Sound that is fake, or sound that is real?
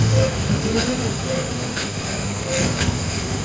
fake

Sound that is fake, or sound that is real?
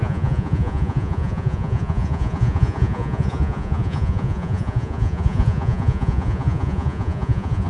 fake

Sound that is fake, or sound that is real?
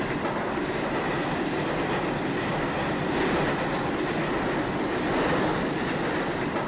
real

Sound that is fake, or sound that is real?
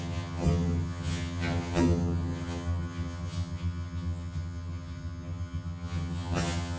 fake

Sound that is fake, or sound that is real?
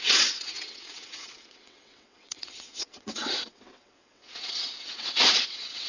fake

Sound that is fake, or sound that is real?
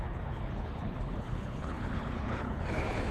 fake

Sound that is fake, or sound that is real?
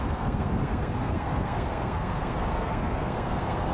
fake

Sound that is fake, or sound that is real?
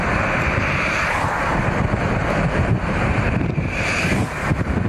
fake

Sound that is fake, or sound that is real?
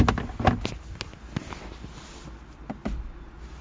real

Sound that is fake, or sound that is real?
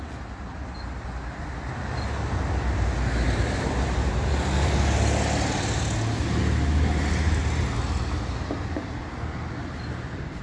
real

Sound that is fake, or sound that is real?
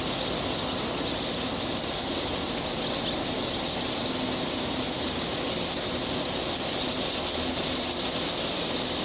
real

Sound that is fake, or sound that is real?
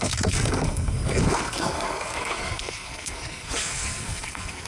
fake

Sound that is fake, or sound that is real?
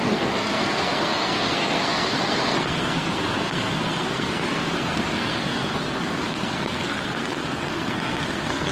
fake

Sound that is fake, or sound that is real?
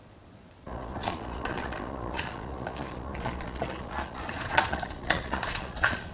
fake